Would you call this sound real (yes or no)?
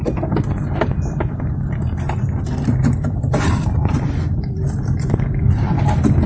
yes